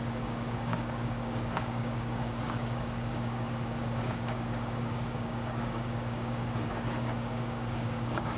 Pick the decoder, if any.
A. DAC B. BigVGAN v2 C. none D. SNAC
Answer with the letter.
A